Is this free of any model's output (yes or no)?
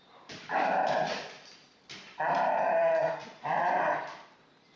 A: no